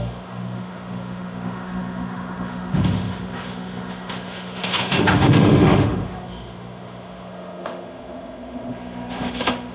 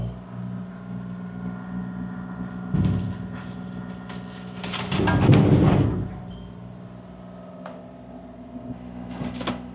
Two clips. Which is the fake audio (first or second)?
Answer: first